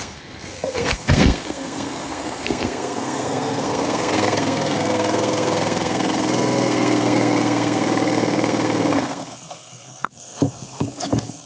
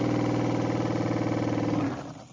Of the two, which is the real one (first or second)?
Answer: second